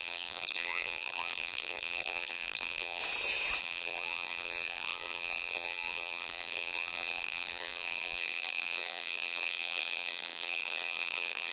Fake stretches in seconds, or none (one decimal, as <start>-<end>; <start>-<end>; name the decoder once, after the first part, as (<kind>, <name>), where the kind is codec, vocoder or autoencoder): 0.0-3.0 (vocoder, BigVGAN v2); 3.6-11.5